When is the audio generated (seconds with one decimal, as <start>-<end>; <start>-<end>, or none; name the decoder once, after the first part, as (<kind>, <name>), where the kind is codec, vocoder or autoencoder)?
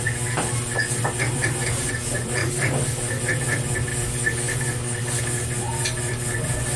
2.4-3.2 (codec, DAC); 3.9-5.2